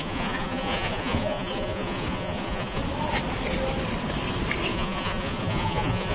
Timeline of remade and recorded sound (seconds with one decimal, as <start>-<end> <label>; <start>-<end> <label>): 0.0-2.8 remade; 2.8-4.7 recorded; 4.7-6.1 remade